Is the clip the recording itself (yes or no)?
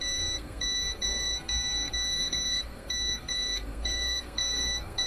no